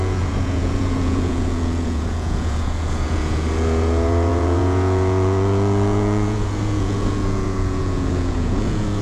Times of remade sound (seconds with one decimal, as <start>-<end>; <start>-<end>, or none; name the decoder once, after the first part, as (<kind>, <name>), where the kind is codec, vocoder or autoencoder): 0.0-9.0 (vocoder, Vocos)